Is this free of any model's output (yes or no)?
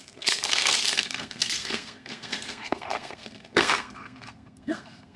no